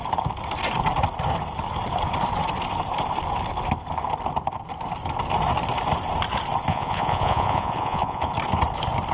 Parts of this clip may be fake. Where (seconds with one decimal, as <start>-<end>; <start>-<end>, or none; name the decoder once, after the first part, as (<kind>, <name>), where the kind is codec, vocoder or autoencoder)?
6.7-8.3 (vocoder, Vocos)